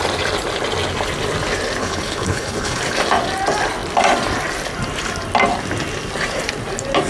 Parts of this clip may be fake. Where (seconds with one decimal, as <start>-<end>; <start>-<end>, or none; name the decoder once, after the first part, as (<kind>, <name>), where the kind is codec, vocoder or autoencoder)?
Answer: 1.8-2.8 (codec, HILCodec)